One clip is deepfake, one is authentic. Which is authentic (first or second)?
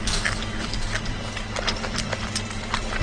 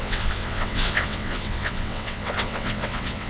first